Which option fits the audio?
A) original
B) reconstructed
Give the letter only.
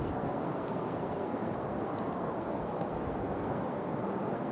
B